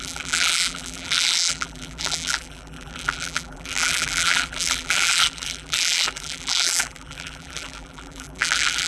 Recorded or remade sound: remade